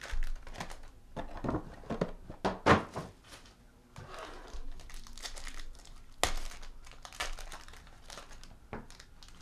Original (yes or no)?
yes